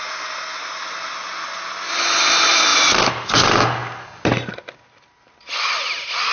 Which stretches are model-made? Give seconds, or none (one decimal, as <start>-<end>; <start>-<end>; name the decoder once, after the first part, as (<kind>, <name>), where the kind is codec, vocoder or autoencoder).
none